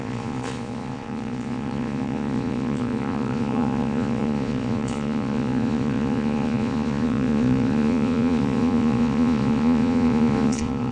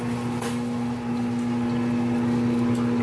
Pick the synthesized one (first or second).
first